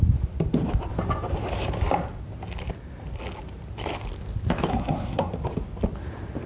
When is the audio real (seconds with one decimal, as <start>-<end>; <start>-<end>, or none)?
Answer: 0.0-4.7; 5.3-6.5